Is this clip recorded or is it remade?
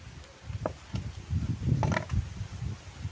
recorded